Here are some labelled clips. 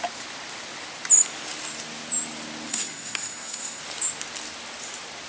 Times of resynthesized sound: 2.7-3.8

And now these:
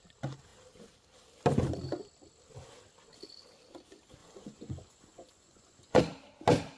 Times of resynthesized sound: 4.2-6.0